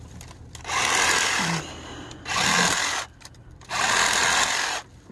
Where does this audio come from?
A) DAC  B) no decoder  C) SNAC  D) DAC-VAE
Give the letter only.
B